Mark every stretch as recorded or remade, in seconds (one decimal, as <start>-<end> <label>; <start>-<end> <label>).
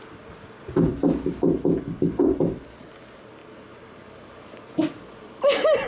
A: 0.0-5.9 recorded